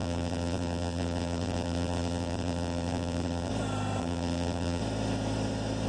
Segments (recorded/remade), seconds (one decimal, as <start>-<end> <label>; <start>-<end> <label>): 0.0-3.5 remade; 3.5-4.0 recorded; 4.0-4.8 remade; 4.8-5.9 recorded